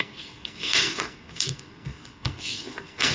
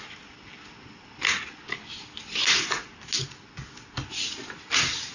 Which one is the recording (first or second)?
second